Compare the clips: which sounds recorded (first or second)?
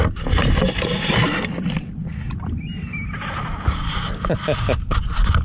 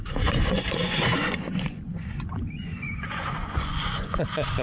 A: first